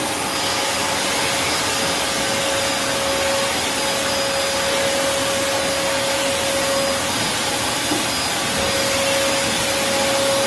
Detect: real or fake real